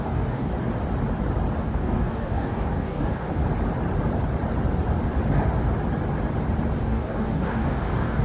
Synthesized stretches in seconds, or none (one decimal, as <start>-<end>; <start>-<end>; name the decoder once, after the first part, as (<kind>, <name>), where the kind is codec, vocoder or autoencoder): 0.0-0.5 (codec, DAC); 1.6-3.4; 6.8-8.2